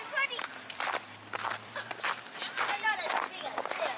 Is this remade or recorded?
remade